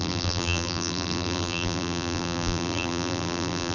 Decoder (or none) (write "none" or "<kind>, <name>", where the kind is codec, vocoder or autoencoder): vocoder, BigVGAN v2